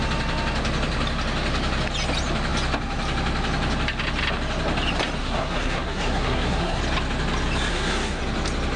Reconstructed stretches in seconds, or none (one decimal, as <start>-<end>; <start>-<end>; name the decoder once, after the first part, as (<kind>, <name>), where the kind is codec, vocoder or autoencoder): 5.2-6.8 (codec, SNAC); 7.7-8.2

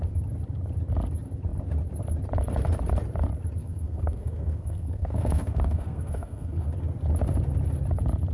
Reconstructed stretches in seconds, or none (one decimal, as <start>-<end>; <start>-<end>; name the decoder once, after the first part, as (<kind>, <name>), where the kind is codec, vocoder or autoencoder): 3.6-6.7 (codec, SNAC)

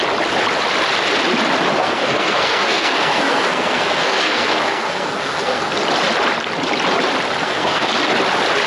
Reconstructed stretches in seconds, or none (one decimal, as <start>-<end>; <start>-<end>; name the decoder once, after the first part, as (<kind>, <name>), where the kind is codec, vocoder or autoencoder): 1.8-5.7 (codec, SNAC); 7.4-7.9

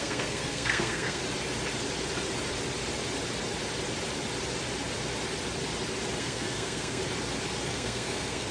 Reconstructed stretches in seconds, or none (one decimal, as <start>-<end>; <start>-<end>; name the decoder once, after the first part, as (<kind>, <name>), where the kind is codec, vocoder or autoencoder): 0.0-1.2 (codec, SNAC); 6.2-7.0; 7.7-8.5

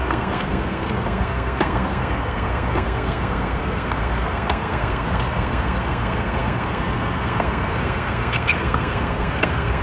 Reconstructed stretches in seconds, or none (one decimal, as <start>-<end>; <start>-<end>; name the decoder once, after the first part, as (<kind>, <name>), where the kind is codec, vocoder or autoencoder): 0.0-9.8 (codec, SNAC)

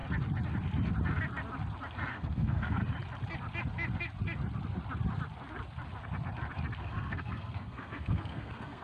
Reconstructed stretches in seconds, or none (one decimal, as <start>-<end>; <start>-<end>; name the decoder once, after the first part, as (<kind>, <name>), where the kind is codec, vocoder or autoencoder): 2.1-2.8 (codec, SNAC); 6.8-8.8

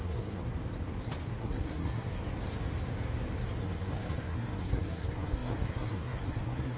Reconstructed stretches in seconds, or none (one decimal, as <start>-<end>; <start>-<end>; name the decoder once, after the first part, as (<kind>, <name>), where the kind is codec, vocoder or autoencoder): 0.0-0.4 (codec, SNAC); 1.4-2.2; 3.6-6.8